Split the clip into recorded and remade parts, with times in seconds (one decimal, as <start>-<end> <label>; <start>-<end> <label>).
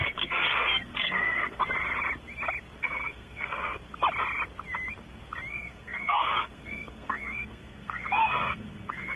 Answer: 0.0-1.6 remade; 1.6-2.8 recorded; 2.8-3.8 remade; 3.8-5.5 recorded; 5.5-9.2 remade